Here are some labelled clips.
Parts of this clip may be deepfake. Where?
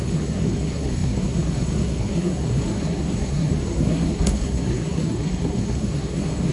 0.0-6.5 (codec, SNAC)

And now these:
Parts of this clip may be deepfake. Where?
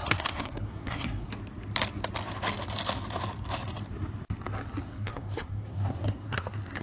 0.0-1.3 (codec, SNAC); 4.8-6.8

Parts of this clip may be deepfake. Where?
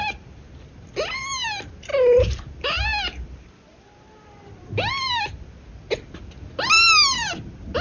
none